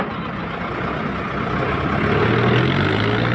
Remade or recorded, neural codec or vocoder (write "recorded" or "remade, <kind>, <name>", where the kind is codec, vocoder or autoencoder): recorded